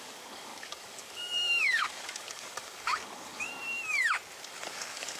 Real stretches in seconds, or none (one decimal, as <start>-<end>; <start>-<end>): 3.5-4.4